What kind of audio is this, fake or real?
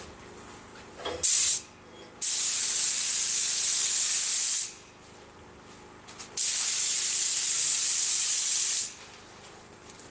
real